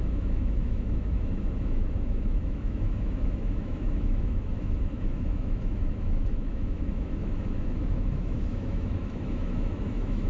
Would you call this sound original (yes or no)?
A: no